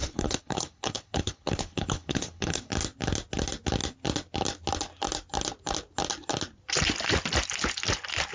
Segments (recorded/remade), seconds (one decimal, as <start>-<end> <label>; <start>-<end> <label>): 0.0-2.7 remade; 2.7-8.3 recorded